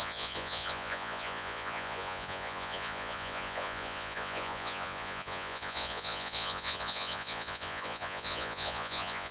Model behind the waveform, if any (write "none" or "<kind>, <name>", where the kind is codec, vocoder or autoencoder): vocoder, Vocos